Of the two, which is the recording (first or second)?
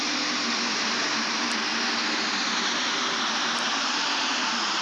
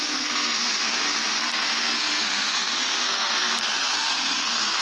first